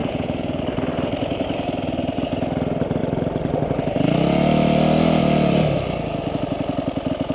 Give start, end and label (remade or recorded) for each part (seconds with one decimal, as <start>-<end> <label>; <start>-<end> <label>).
0.0-0.6 remade; 0.6-7.3 recorded